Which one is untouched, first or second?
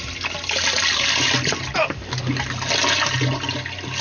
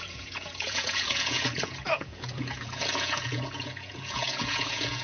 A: first